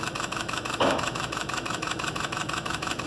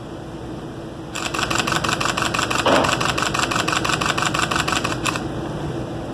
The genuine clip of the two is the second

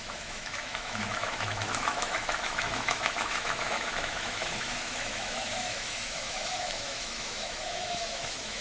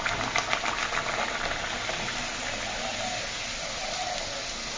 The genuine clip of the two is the second